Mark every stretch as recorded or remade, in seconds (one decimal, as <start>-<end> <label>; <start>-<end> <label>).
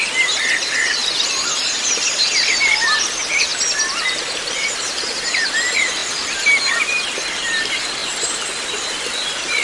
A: 0.0-1.0 recorded; 1.0-2.2 remade; 2.2-3.5 recorded; 3.5-4.7 remade; 4.7-6.0 recorded; 6.0-7.0 remade; 7.0-8.0 recorded; 8.0-8.7 remade; 8.7-9.6 recorded